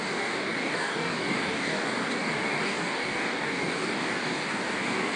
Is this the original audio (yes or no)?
no